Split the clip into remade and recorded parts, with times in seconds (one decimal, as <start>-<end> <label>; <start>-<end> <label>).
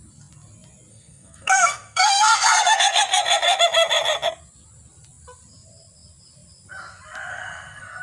0.0-0.9 recorded; 0.9-3.6 remade; 3.6-7.3 recorded; 7.3-8.0 remade